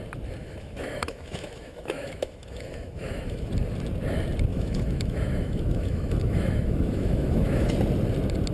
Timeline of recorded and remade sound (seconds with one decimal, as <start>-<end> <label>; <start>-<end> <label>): 0.0-0.4 recorded; 0.4-3.5 remade; 3.5-4.5 recorded; 4.5-7.7 remade; 7.7-8.5 recorded